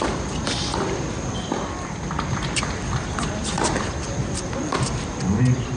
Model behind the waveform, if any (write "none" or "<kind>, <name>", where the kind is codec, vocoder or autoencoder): vocoder, BigVGAN v2